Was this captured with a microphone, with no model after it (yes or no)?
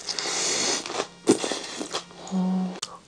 yes